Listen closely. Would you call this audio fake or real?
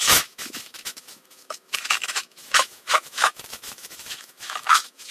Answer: fake